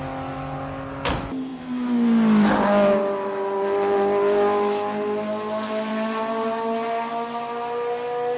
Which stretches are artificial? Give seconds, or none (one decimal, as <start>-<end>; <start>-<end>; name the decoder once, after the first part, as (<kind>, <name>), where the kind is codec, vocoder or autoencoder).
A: none